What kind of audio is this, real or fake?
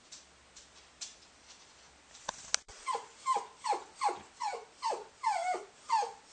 real